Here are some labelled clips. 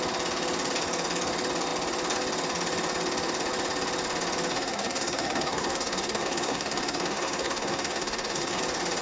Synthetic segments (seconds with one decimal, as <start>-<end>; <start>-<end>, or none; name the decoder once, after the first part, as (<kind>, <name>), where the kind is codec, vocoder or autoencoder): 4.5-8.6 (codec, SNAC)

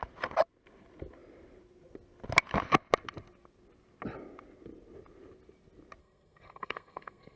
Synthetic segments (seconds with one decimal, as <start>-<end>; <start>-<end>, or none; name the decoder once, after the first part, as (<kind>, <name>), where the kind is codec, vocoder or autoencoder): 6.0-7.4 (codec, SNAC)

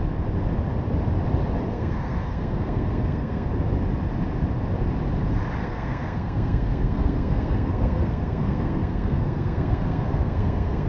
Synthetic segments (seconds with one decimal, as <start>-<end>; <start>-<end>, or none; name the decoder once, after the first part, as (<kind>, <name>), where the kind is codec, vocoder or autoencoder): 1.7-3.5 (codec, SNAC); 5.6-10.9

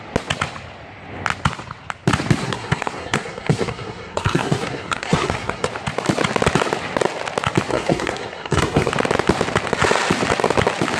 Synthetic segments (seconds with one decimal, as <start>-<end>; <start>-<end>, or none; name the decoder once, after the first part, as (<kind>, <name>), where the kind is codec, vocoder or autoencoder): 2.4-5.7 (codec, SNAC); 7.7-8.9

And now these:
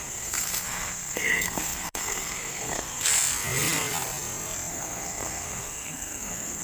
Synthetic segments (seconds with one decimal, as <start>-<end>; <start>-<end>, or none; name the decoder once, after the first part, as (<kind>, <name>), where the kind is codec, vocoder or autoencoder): 0.0-3.1 (codec, SNAC); 4.7-6.6